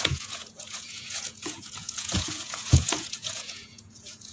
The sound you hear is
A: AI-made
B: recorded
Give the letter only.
A